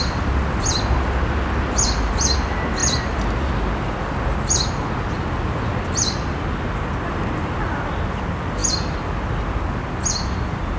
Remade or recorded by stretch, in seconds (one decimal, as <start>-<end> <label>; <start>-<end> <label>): 0.0-10.8 recorded